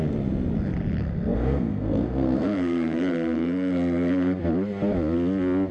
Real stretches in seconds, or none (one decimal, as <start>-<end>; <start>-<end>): 0.0-1.0; 4.4-5.7